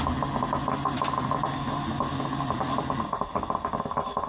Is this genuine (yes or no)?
yes